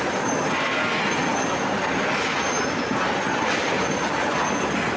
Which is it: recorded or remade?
recorded